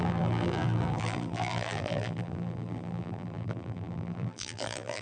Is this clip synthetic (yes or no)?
yes